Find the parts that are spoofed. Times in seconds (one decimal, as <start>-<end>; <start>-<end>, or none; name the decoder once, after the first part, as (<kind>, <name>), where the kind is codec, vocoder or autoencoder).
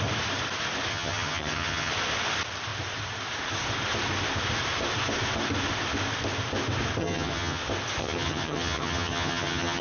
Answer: 0.9-1.9 (vocoder, HiFi-GAN); 7.0-7.6; 8.0-9.8